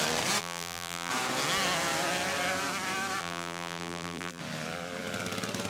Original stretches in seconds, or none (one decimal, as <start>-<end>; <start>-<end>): 0.0-0.4; 1.1-3.2; 4.4-5.7